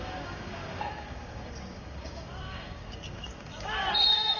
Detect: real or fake fake